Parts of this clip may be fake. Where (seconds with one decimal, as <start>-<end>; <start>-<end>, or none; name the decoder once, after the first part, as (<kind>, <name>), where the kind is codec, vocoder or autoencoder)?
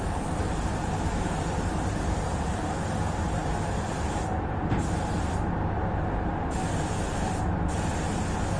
none